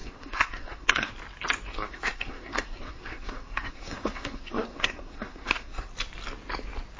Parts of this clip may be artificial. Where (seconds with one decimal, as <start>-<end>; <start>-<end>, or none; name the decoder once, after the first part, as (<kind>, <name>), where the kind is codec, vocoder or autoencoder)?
0.0-1.1 (codec, SNAC); 1.7-5.9